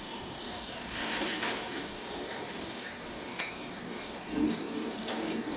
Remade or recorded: remade